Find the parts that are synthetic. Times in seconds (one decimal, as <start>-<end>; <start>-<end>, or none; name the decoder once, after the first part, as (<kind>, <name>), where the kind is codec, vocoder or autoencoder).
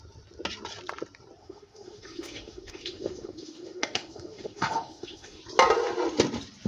1.4-5.4 (autoencoder, DAC-VAE)